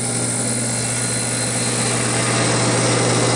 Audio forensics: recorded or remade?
recorded